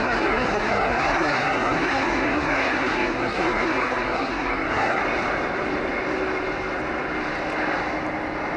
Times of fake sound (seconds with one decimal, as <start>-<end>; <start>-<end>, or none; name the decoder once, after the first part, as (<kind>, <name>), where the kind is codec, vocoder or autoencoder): 0.0-5.0 (codec, SNAC)